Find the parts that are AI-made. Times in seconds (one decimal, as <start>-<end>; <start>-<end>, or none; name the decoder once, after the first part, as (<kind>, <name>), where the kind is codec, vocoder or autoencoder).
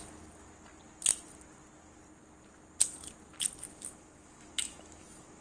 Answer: 3.7-5.4 (autoencoder, DAC-VAE)